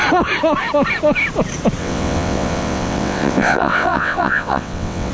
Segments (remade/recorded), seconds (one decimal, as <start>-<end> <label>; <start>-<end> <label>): 0.0-1.8 recorded; 1.8-5.1 remade